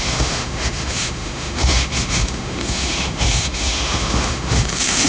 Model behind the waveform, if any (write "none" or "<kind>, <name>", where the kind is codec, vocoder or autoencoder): autoencoder, DAC-VAE